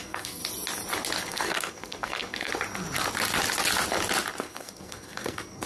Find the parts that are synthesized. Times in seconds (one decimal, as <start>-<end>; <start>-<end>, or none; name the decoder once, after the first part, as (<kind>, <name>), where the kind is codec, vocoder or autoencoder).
0.0-0.4 (codec, SNAC); 1.3-2.5; 4.4-5.7